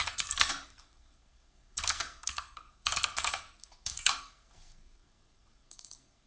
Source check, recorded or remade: remade